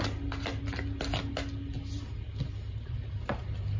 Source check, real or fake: real